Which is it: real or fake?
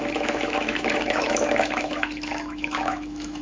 fake